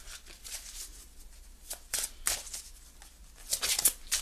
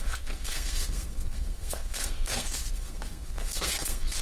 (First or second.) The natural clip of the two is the first